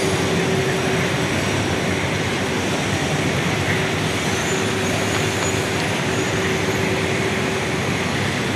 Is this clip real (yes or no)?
yes